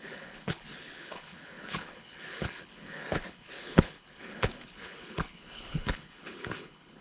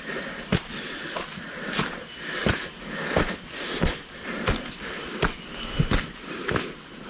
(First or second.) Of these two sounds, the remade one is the first